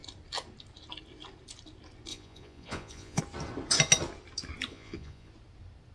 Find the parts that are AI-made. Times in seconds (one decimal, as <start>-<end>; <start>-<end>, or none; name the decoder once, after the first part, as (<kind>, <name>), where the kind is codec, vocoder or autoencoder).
2.1-3.2 (vocoder, Vocos); 4.7-5.3